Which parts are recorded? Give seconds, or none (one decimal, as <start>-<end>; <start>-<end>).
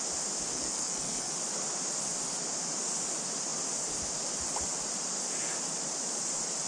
0.0-0.5; 1.3-6.7